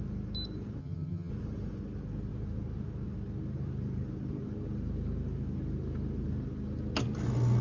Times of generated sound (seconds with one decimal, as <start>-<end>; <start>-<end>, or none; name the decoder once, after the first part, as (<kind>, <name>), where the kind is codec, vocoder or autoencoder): 0.8-1.3 (vocoder, HiFi-GAN)

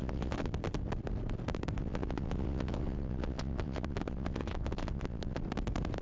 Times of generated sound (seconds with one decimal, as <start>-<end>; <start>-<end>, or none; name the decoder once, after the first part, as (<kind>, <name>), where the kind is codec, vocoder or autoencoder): 0.0-0.5 (vocoder, WaveNeXt); 1.8-5.4

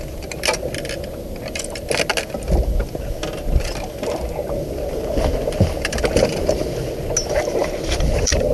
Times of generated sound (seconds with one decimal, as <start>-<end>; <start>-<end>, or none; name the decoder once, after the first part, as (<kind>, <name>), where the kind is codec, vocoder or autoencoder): 7.6-8.5 (vocoder, BigVGAN v2)

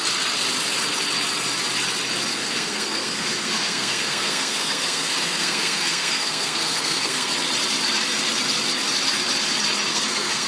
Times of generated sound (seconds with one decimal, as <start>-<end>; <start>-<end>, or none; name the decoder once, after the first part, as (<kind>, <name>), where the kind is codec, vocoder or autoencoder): 2.3-7.3 (codec, SNAC); 9.9-10.5

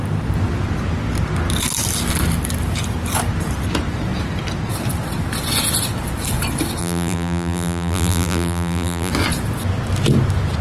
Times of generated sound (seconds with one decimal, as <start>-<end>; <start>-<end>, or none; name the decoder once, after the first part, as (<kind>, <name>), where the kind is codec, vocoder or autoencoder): 6.8-9.1 (vocoder, BigVGAN v2)

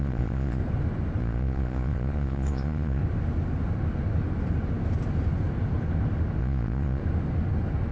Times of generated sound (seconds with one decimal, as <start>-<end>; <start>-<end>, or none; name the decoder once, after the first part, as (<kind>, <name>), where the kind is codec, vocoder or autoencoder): 0.0-0.6 (vocoder, Vocos); 1.2-3.0; 6.4-7.0

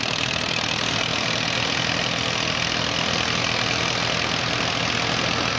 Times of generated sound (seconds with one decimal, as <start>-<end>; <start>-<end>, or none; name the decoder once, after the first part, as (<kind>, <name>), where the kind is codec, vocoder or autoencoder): none